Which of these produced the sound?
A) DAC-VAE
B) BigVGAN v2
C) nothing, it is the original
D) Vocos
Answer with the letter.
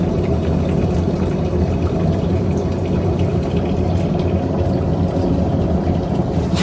C